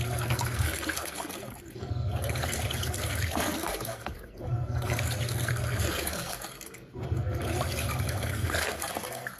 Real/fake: fake